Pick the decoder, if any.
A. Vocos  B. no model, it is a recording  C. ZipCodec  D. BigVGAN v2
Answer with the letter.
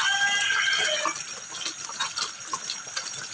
B